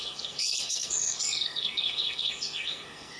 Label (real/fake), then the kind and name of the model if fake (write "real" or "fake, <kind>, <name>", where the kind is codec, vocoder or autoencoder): fake, codec, SNAC